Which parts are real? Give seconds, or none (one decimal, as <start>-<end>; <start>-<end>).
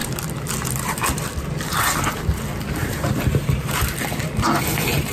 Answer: 1.8-2.8; 3.6-5.1